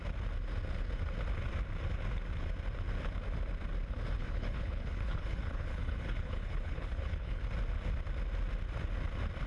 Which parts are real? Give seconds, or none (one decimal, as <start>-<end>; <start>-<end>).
0.0-4.2; 7.4-9.5